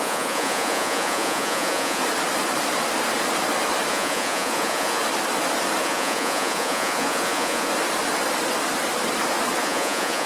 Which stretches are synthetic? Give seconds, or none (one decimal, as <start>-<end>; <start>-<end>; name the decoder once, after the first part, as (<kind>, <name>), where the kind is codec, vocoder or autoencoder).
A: 0.0-2.0 (vocoder, Vocos); 3.9-5.0; 5.8-7.7; 9.6-10.3